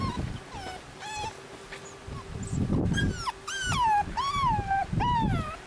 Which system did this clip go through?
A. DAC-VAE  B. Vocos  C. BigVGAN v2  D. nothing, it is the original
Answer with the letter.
D